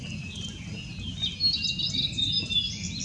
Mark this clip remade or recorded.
recorded